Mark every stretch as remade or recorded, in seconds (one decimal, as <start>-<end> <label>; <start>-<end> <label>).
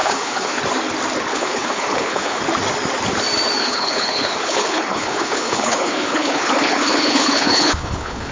0.0-0.6 remade; 0.6-1.3 recorded; 1.3-2.4 remade; 2.4-3.6 recorded; 3.6-8.3 remade